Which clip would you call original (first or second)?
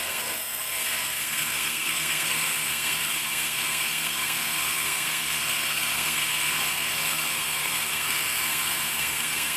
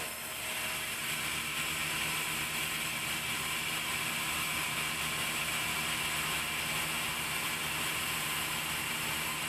second